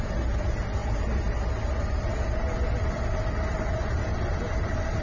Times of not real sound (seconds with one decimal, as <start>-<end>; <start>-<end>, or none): none